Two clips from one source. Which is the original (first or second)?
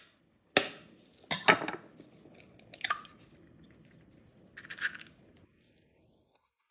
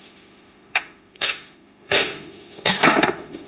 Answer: first